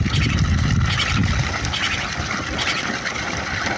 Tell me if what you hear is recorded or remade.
recorded